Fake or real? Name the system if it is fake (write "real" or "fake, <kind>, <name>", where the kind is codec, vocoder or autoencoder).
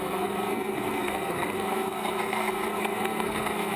fake, codec, SNAC